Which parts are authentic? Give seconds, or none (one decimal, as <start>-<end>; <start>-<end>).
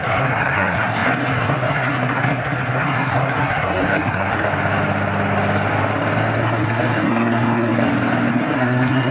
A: 4.5-6.4; 7.8-8.3